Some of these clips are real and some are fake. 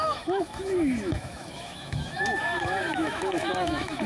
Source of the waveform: fake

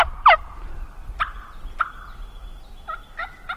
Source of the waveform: real